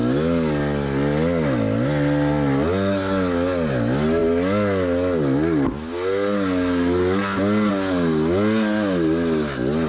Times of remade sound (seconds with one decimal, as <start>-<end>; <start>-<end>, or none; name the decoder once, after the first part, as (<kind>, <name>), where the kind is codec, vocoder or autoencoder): none